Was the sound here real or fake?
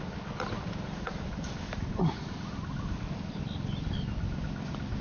real